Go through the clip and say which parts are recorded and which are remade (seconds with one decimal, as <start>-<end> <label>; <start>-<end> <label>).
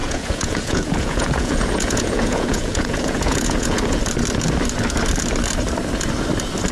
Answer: 0.0-4.0 remade; 4.0-6.7 recorded